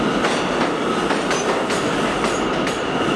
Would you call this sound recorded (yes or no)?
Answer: yes